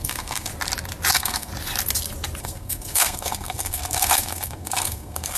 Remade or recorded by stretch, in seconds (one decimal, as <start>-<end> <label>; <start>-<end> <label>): 0.0-0.5 remade; 0.5-1.1 recorded; 1.1-1.5 remade; 1.5-2.4 recorded; 2.4-5.4 remade